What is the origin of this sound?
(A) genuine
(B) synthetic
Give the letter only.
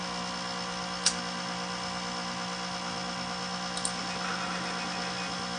A